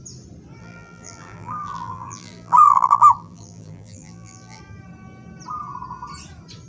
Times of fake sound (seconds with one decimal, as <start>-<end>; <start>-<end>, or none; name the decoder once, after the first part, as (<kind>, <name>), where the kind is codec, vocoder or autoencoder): 0.6-4.6 (vocoder, BigVGAN v2)